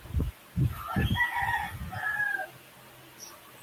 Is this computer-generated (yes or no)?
no